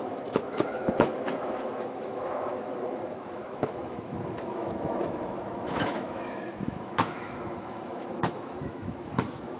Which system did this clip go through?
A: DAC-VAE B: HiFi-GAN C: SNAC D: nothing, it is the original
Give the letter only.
A